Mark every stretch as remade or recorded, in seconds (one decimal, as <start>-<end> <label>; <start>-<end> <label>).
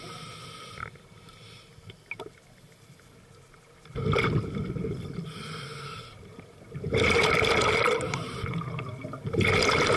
0.0-10.0 recorded